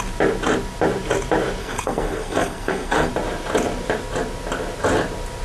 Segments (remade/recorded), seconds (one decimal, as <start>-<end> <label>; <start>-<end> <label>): 0.0-1.6 recorded; 1.6-3.1 remade; 3.1-5.4 recorded